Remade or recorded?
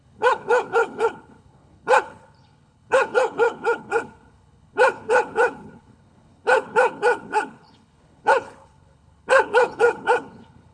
remade